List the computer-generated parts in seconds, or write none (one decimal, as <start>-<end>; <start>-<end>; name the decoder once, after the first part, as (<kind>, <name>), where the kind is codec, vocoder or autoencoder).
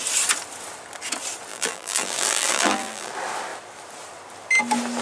1.5-3.1 (vocoder, BigVGAN v2)